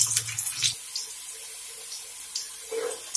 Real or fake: real